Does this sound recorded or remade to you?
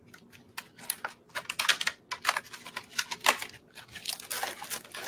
recorded